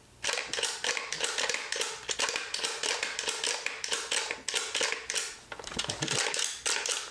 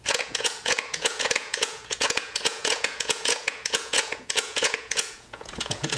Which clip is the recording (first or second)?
first